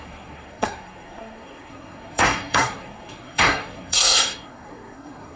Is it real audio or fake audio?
fake